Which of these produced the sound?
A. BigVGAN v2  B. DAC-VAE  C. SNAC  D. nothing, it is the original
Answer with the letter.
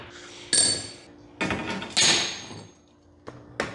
D